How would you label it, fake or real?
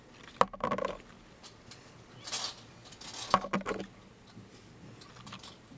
real